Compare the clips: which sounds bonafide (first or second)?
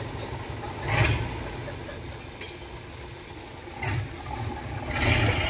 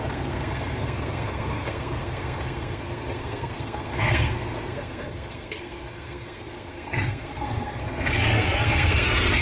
first